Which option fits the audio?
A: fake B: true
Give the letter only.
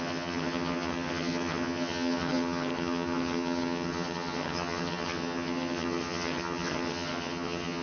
A